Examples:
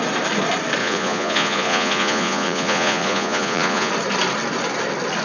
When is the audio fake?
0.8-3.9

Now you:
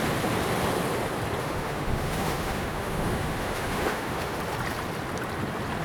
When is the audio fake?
1.4-4.4

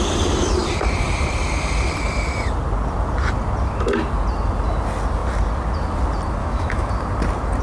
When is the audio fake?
6.4-6.9

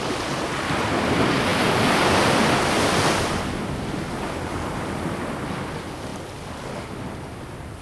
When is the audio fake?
none